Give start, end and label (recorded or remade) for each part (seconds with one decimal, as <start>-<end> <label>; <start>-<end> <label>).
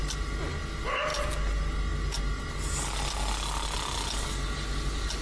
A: 0.0-5.2 recorded